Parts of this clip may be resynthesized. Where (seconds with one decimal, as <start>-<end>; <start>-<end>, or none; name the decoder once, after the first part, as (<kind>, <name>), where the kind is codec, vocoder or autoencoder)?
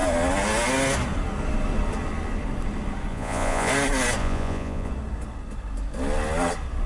3.1-3.7 (vocoder, Vocos); 4.2-4.9